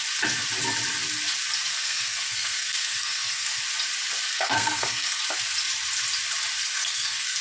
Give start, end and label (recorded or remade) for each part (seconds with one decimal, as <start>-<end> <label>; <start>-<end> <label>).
0.0-1.7 recorded; 1.7-3.6 remade; 3.6-4.3 recorded; 4.3-5.2 remade; 5.2-6.6 recorded; 6.6-7.4 remade